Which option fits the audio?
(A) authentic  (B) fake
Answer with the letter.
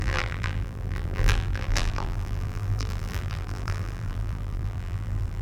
B